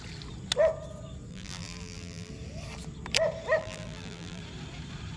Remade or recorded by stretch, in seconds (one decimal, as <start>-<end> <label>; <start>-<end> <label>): 0.0-1.3 recorded; 1.3-2.3 remade; 2.3-3.6 recorded; 3.6-4.4 remade; 4.4-5.2 recorded